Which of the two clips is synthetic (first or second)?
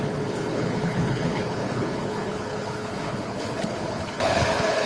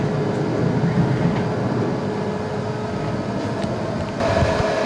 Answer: first